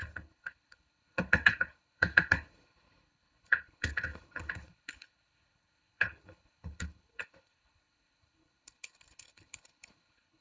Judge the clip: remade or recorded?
remade